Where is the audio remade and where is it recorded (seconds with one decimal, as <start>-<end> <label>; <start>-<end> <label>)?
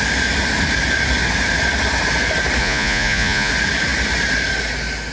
0.0-2.6 recorded; 2.6-3.5 remade; 3.5-5.1 recorded